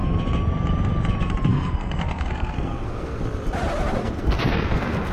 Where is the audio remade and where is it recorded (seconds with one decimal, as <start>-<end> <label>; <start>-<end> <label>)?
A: 0.0-1.5 recorded; 1.5-3.2 remade; 3.2-4.0 recorded; 4.0-5.1 remade